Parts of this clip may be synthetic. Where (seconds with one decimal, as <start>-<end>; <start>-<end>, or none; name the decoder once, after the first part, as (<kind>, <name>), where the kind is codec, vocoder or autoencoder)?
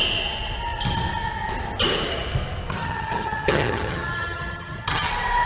2.8-5.1 (vocoder, HiFi-GAN)